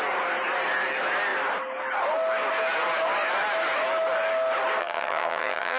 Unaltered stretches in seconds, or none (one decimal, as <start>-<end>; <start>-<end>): 0.0-4.8